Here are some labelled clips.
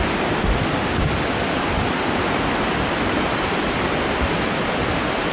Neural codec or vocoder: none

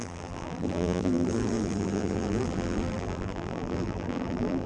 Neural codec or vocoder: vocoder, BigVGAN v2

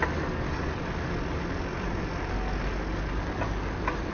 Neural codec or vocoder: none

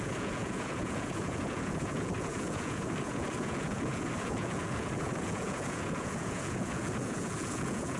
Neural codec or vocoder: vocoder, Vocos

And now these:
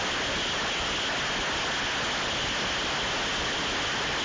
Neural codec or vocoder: none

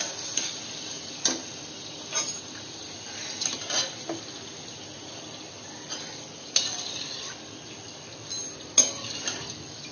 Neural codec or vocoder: none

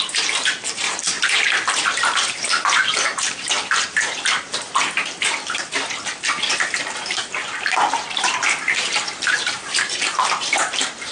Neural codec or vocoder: vocoder, BigVGAN v2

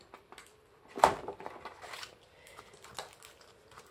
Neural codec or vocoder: none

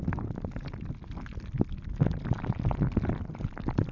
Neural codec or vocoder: none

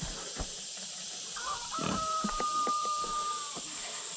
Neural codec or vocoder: vocoder, BigVGAN v2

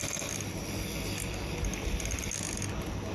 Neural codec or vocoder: none